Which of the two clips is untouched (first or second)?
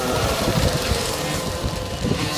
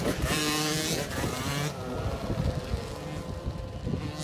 second